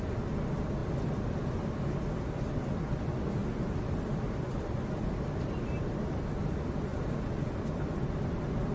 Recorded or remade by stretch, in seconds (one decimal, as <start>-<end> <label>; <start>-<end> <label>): 0.0-8.7 recorded